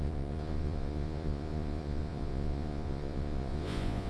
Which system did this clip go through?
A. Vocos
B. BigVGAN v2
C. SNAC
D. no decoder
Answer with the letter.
A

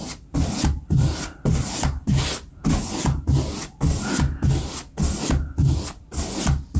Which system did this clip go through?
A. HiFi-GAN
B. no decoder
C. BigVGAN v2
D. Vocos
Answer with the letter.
B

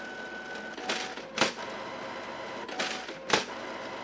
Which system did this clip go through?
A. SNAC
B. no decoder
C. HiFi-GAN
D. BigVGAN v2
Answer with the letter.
B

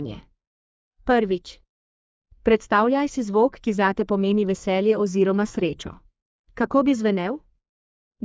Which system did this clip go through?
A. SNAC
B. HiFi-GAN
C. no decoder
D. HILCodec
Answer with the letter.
A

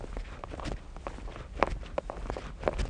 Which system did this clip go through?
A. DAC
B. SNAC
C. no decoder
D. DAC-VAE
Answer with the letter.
C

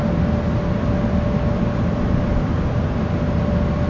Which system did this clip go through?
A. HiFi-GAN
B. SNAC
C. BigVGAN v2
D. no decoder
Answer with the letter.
D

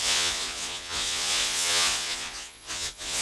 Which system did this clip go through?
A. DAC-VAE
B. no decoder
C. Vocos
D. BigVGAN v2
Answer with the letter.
C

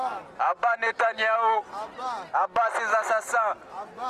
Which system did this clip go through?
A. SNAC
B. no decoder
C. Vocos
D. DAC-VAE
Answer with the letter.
B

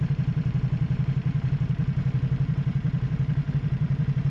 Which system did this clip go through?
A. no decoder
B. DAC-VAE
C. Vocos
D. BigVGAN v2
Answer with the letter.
D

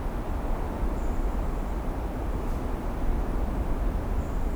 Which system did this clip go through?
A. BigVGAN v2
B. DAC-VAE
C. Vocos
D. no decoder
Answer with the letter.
D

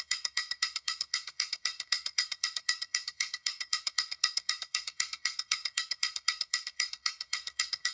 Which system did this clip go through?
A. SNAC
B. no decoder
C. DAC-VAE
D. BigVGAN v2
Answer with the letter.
A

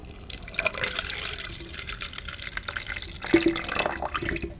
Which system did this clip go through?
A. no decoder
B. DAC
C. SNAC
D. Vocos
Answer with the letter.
A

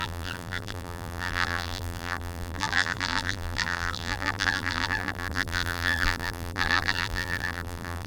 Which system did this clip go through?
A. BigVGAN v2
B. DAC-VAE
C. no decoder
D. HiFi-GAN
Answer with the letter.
A